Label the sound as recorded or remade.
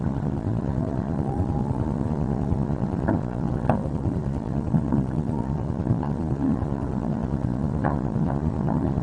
remade